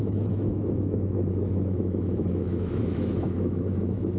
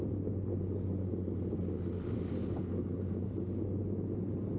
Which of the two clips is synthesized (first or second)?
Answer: first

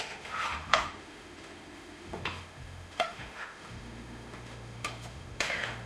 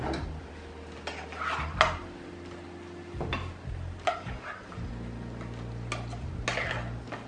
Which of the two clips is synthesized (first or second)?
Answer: first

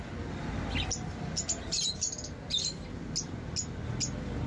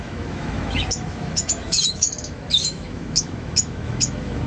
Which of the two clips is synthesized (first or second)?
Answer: second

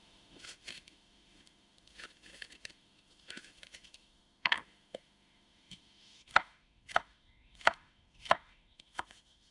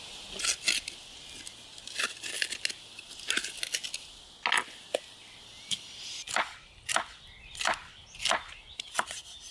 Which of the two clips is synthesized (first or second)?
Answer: first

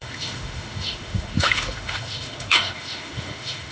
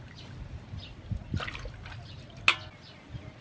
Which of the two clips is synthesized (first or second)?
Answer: first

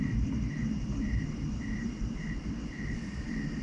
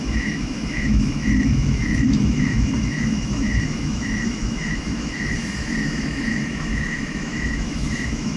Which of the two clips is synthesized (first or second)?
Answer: second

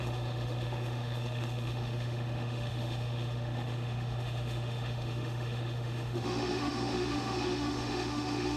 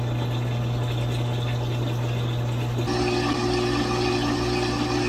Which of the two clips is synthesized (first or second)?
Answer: first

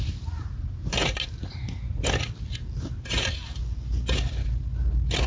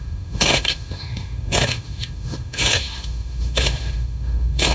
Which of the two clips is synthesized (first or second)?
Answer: second